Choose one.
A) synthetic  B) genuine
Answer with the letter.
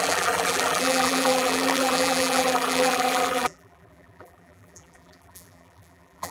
A